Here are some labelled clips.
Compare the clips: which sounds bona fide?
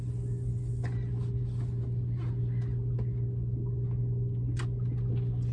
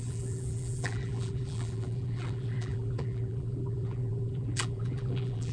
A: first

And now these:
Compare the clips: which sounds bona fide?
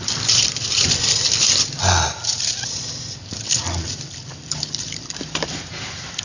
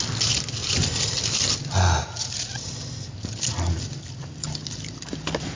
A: second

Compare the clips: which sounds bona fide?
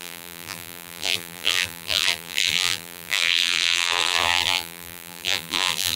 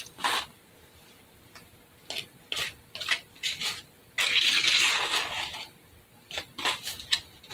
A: second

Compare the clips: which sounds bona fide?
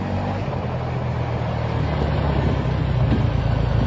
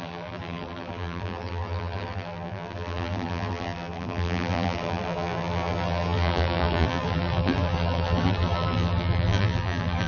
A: first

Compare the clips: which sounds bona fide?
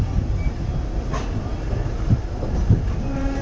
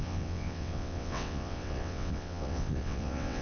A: first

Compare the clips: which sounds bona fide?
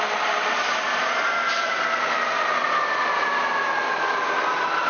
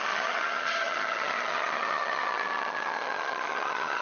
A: first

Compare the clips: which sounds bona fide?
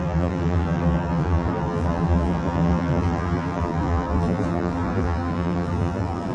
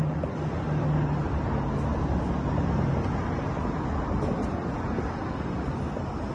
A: second